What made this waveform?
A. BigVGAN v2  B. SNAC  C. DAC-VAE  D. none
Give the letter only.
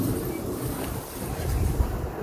D